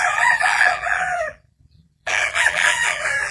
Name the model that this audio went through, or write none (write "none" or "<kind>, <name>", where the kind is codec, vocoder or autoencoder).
vocoder, BigVGAN v2